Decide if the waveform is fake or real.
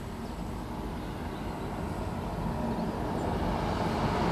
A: real